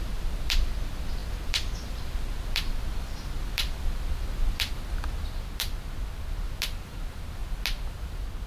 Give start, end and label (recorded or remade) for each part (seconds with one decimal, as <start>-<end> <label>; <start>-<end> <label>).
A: 0.0-8.5 recorded